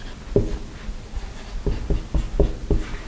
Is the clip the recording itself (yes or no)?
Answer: yes